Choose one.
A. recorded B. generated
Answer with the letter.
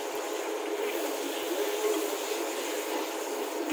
A